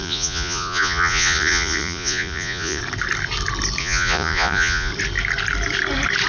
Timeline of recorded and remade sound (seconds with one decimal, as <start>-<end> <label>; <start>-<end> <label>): 0.0-2.8 remade; 2.8-3.8 recorded; 3.8-4.9 remade; 4.9-6.3 recorded